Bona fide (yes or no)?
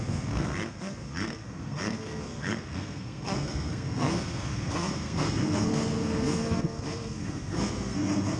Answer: no